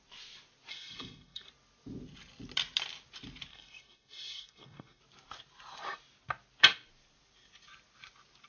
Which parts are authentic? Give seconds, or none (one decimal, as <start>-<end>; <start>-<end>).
0.0-0.7; 1.5-3.5; 5.0-8.5